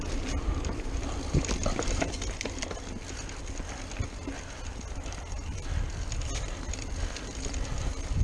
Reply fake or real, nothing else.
real